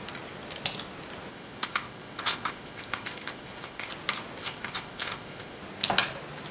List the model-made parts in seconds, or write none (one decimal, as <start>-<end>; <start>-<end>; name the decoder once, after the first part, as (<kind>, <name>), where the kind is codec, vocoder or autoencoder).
1.3-3.9 (codec, ZipCodec); 4.4-5.6